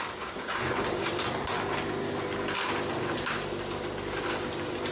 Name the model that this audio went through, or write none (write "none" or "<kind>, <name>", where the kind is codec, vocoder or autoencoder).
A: none